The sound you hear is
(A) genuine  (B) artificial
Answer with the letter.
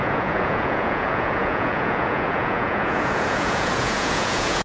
B